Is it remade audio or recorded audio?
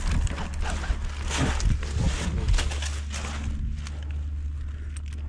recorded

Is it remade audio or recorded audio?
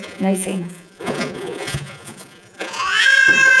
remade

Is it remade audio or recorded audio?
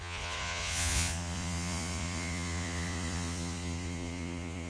remade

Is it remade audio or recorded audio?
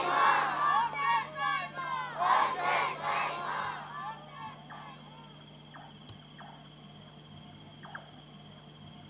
recorded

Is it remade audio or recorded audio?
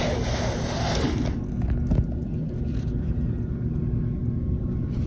recorded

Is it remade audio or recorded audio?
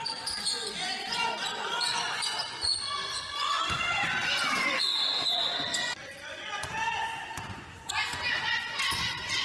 remade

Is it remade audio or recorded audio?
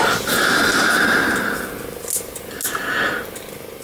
recorded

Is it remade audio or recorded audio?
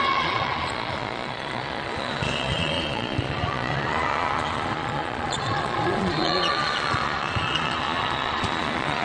remade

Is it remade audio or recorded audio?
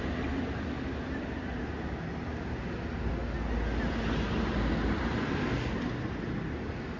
recorded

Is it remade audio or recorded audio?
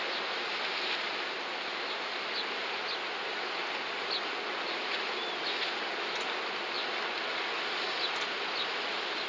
recorded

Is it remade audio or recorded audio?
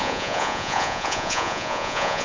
remade